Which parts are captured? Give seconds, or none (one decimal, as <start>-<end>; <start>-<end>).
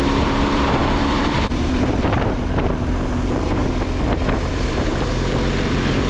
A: 3.6-4.5